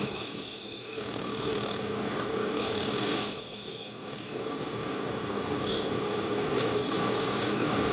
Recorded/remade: remade